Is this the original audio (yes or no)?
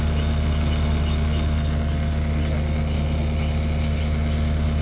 yes